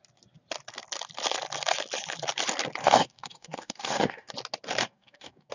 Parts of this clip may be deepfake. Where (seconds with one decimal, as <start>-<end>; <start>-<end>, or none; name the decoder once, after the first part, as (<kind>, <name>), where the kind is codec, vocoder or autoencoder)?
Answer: 2.8-4.3 (codec, DAC); 4.8-5.5